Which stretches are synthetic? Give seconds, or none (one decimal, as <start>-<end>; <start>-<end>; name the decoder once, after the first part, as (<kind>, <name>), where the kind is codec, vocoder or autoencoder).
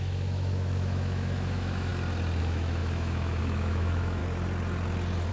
0.0-1.9 (autoencoder, DAC-VAE); 2.4-4.2